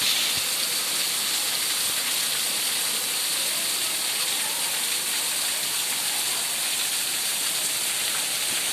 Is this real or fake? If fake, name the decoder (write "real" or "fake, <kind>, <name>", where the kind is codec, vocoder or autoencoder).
real